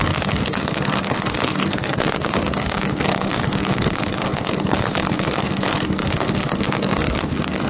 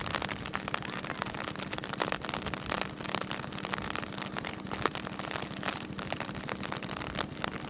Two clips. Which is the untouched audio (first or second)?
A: second